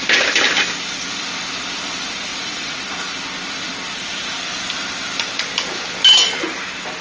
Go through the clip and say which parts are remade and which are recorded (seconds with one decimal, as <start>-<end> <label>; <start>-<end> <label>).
0.0-2.3 recorded; 2.3-2.8 remade; 2.8-7.0 recorded